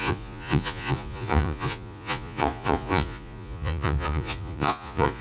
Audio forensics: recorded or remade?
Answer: remade